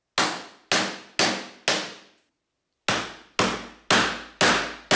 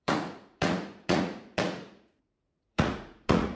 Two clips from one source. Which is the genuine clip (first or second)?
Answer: first